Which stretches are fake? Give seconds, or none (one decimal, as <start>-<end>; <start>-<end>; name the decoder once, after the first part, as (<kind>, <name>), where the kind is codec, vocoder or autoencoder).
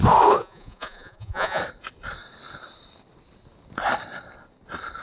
0.4-1.6 (vocoder, Vocos)